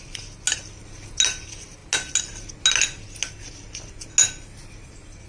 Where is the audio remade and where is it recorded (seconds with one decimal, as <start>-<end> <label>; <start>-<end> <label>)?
0.0-5.3 recorded